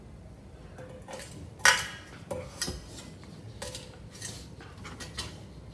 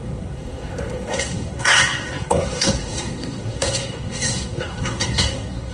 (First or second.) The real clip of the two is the first